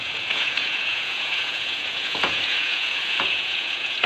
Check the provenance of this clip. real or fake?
fake